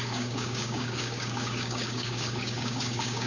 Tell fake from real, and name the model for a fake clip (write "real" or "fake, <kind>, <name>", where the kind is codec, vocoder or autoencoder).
fake, codec, DAC